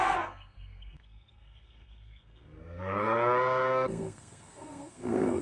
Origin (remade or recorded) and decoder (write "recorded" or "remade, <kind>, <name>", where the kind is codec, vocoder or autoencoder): remade, codec, SNAC